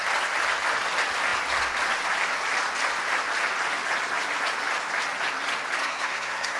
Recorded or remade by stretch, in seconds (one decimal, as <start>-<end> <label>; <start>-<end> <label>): 0.0-5.8 recorded; 5.8-6.6 remade